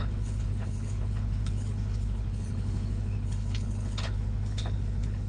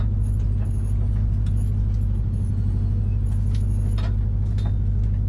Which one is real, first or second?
second